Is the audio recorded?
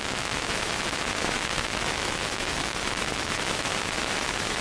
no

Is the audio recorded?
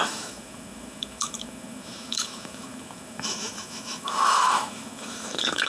no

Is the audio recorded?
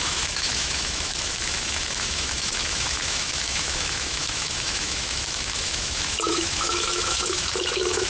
no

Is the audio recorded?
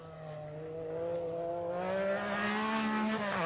yes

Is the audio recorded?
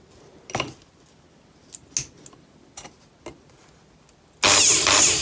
yes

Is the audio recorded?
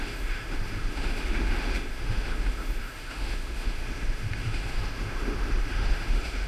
no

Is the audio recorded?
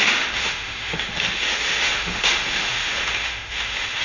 no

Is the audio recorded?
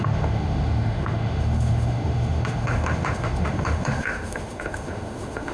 no